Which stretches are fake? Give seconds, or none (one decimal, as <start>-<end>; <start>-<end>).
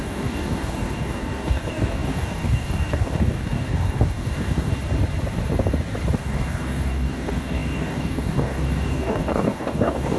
0.0-4.7; 6.2-10.2